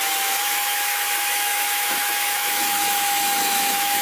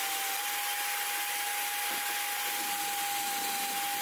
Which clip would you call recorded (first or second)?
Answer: second